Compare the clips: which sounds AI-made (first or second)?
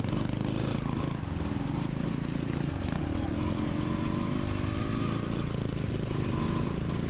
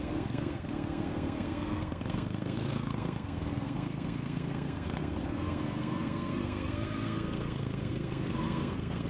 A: second